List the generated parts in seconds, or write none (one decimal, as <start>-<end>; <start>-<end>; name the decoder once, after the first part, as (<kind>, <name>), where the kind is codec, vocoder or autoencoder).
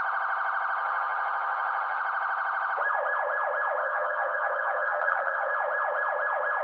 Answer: 0.8-2.0 (vocoder, HiFi-GAN); 3.8-5.5